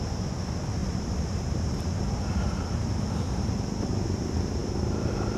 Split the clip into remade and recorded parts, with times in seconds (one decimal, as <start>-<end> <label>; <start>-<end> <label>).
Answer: 0.0-0.8 recorded; 0.8-3.5 remade; 3.5-5.4 recorded